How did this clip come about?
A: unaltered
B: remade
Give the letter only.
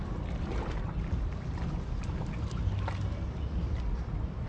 A